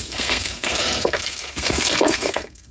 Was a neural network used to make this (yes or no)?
yes